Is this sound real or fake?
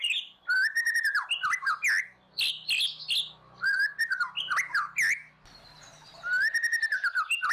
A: real